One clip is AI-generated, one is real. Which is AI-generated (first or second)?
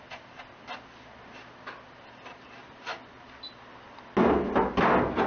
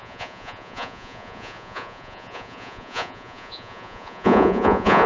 second